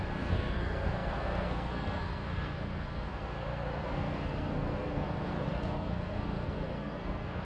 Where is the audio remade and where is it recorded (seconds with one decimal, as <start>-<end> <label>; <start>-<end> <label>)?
0.0-7.4 remade